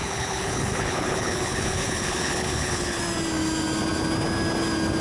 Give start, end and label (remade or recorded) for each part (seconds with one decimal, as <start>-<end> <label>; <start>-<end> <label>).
0.0-3.0 remade; 3.0-5.0 recorded